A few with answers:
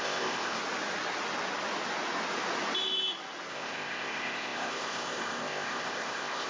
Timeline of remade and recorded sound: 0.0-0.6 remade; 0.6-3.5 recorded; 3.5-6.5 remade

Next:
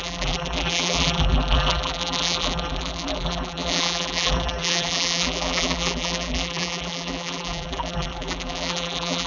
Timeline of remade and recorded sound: 0.0-9.3 remade

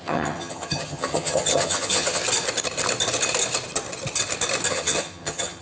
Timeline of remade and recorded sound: 0.0-2.2 remade; 2.2-4.7 recorded; 4.7-5.6 remade

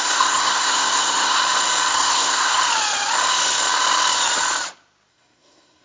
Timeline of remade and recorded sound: 0.0-1.4 remade; 1.4-1.9 recorded; 1.9-2.6 remade; 2.6-5.1 recorded; 5.1-5.8 remade

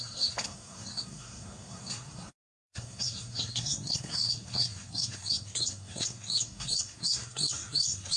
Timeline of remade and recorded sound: 0.0-8.2 remade

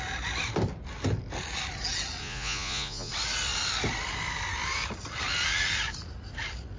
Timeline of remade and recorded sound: 0.0-2.2 recorded; 2.2-3.1 remade; 3.1-6.8 recorded

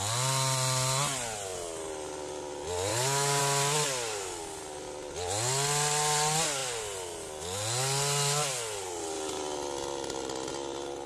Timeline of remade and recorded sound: 0.0-2.9 recorded; 2.9-3.4 remade; 3.4-11.1 recorded

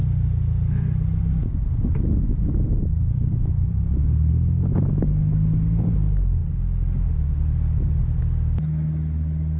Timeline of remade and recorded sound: 0.0-1.9 recorded; 1.9-4.3 remade; 4.3-9.6 recorded